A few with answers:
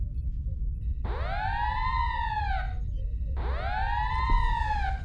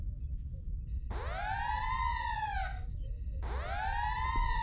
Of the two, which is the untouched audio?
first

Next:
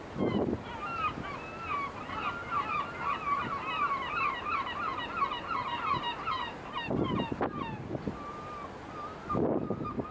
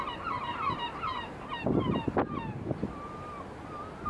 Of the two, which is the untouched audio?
first